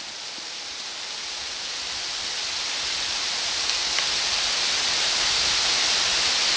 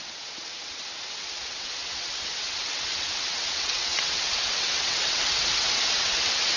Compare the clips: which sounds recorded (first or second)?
first